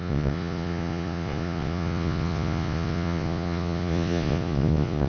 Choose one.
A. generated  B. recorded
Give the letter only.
A